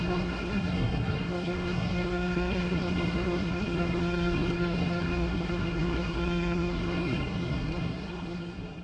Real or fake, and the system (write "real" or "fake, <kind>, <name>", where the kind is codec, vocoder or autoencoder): fake, codec, SNAC